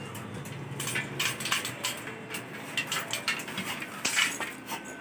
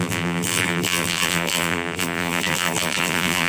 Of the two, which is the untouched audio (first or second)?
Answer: first